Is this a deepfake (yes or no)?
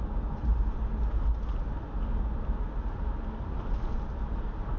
no